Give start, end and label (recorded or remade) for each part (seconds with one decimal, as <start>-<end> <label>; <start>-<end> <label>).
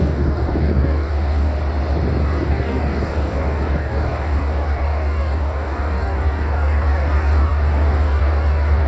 0.0-1.5 remade; 1.5-2.2 recorded; 2.2-8.9 remade